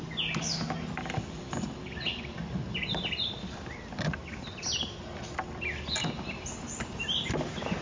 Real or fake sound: real